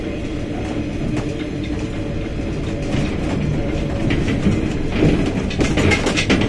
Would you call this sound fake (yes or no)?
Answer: no